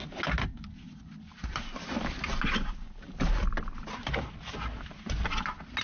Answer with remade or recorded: recorded